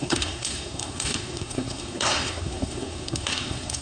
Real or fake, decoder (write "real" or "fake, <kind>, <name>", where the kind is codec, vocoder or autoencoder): fake, codec, SNAC